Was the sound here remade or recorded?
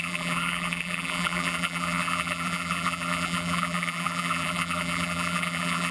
remade